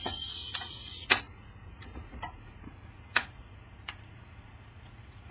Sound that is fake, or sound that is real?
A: fake